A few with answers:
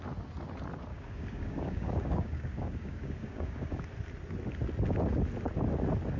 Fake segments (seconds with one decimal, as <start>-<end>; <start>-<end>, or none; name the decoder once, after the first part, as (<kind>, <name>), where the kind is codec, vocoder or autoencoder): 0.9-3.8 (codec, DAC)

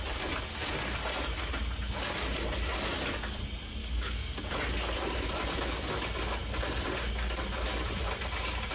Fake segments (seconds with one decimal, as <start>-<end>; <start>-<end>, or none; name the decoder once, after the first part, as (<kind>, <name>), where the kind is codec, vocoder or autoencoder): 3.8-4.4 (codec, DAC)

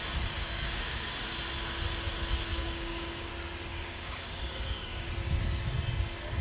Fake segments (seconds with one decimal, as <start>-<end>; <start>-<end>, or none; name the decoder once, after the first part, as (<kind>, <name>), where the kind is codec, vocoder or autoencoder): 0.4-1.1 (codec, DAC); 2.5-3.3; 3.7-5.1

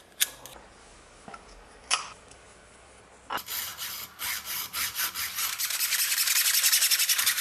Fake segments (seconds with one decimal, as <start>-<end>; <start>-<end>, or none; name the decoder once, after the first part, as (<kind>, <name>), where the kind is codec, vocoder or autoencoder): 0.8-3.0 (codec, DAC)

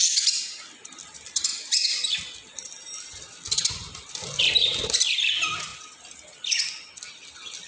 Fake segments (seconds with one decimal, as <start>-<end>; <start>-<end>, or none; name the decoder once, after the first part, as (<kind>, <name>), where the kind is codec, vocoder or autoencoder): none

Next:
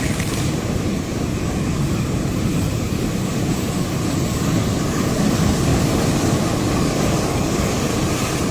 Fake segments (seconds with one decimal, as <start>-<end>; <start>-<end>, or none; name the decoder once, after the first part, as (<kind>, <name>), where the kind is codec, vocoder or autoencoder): 0.0-7.9 (codec, DAC)

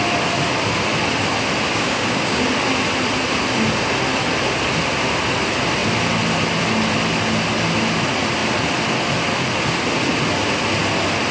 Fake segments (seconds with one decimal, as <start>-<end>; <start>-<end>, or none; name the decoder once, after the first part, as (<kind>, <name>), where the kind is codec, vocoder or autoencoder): 1.7-2.4 (codec, DAC)

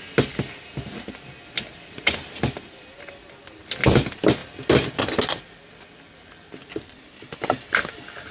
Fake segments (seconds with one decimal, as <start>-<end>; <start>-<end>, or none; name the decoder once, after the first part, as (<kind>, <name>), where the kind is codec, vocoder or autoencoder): none